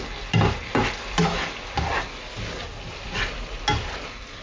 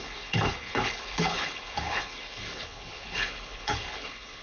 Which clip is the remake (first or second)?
second